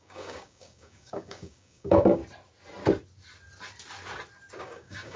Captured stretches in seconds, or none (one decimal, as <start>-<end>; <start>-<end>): 2.2-4.6